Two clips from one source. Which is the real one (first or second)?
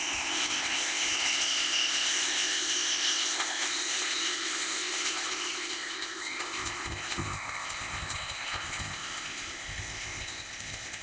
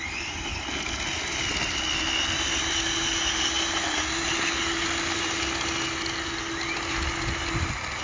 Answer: second